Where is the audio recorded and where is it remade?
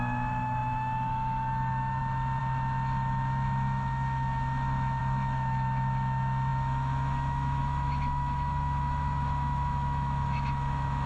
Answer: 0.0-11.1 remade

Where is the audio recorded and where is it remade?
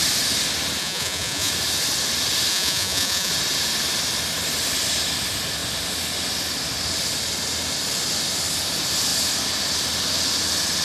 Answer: 0.0-0.8 recorded; 0.8-1.5 remade; 1.5-2.5 recorded; 2.5-3.3 remade; 3.3-10.8 recorded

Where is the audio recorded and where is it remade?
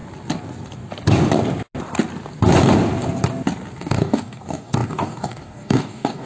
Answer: 0.0-3.8 recorded; 3.8-6.3 remade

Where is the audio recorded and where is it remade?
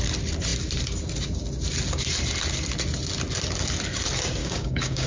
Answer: 0.0-4.4 recorded; 4.4-5.1 remade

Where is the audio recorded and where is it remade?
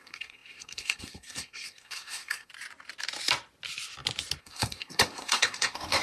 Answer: 0.0-2.5 remade; 2.5-4.4 recorded; 4.4-6.0 remade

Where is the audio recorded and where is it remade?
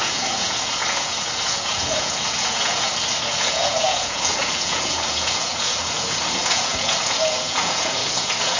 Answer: 0.0-2.9 remade; 2.9-3.4 recorded; 3.4-8.6 remade